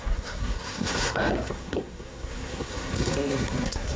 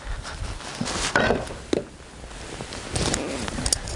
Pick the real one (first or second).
second